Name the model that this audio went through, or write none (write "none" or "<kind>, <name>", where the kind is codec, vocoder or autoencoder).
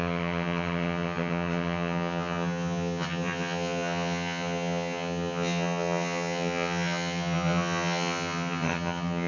vocoder, HiFi-GAN